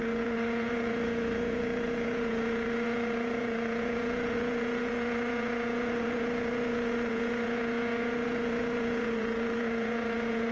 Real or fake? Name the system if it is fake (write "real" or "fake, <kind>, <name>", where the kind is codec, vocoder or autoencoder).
fake, vocoder, Vocos